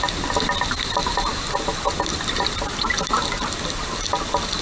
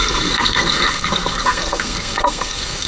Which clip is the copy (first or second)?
second